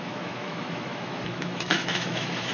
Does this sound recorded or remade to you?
remade